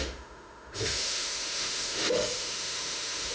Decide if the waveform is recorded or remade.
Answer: remade